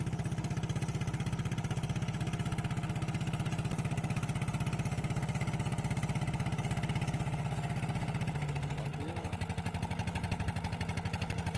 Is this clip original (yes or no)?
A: yes